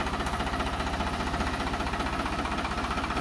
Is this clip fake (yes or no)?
no